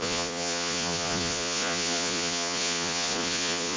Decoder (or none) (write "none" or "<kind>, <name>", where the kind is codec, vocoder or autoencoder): vocoder, Vocos